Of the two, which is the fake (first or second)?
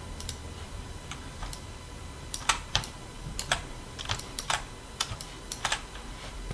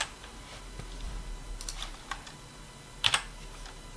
first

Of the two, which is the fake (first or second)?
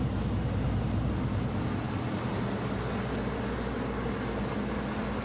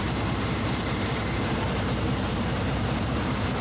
second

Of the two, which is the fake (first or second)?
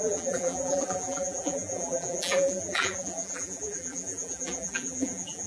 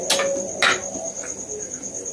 first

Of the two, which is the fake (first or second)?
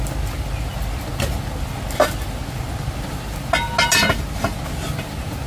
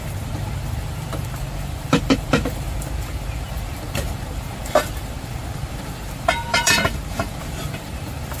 second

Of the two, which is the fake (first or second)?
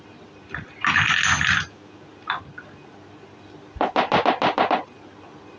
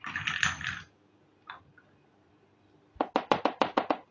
second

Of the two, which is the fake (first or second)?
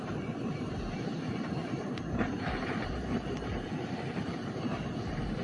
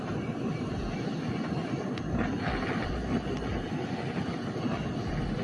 first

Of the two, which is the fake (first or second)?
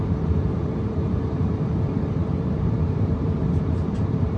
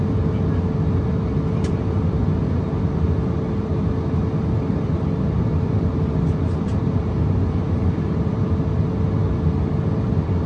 first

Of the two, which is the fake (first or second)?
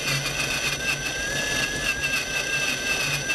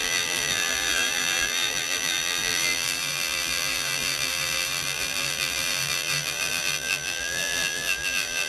second